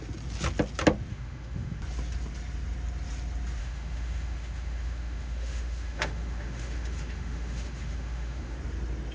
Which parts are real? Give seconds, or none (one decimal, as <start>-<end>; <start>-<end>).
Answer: 0.0-1.1; 1.8-3.6; 8.6-9.1